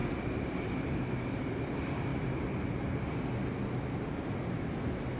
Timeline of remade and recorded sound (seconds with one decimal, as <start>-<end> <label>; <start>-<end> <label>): 0.0-5.2 recorded

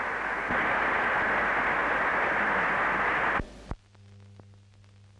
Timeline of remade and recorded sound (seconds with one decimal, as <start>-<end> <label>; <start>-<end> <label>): 0.0-5.2 recorded

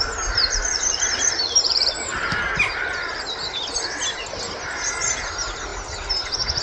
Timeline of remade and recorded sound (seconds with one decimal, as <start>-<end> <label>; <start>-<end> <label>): 0.0-6.6 recorded

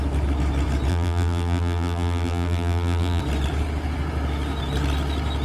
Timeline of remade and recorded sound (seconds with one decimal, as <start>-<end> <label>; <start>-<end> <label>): 0.0-0.9 recorded; 0.9-3.2 remade; 3.2-5.4 recorded

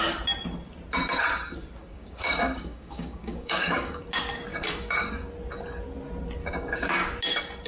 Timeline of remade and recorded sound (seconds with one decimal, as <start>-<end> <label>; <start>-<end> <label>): 0.0-1.8 recorded; 1.8-4.0 remade; 4.0-4.5 recorded; 4.5-5.3 remade; 5.3-6.4 recorded; 6.4-7.2 remade; 7.2-7.7 recorded

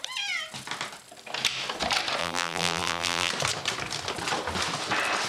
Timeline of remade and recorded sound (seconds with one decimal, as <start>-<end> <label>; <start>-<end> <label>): 0.0-2.2 recorded; 2.2-3.3 remade; 3.3-5.3 recorded